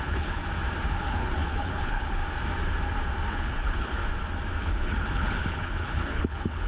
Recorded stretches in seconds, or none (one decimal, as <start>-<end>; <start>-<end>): 0.4-0.9; 2.2-3.3; 4.0-4.6

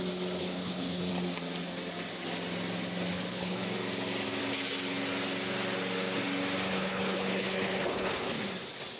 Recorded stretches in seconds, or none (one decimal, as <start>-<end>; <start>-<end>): 0.0-0.4; 1.1-3.1; 3.6-6.7; 8.4-9.0

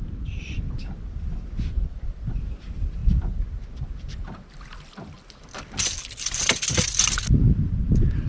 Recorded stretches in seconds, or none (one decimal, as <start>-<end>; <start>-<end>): 0.0-8.3

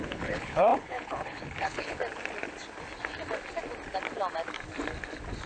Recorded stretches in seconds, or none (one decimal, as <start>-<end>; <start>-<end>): 2.0-5.5

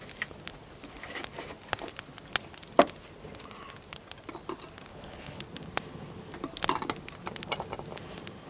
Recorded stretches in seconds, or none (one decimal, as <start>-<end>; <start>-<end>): 0.0-4.9; 5.4-8.5